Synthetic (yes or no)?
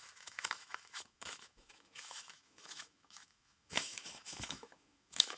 yes